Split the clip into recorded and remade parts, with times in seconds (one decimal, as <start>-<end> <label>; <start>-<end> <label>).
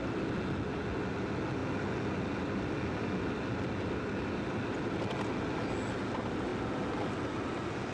0.0-7.9 recorded